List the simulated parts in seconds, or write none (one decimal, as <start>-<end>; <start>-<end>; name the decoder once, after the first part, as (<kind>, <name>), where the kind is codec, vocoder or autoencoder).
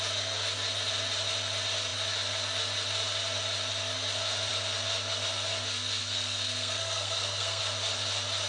6.0-7.6 (codec, SNAC)